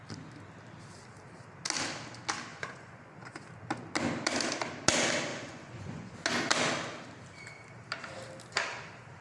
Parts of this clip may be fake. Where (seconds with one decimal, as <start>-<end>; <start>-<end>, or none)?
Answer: 2.5-3.4; 5.3-6.1